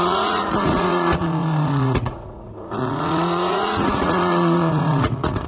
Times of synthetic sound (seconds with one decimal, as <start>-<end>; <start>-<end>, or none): 0.0-5.5